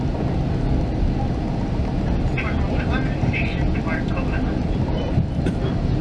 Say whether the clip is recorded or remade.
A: recorded